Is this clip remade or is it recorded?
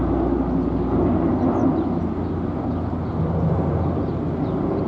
recorded